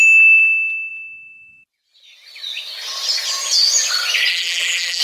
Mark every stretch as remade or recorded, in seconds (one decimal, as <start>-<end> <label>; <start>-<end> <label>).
0.0-4.3 recorded; 4.3-5.0 remade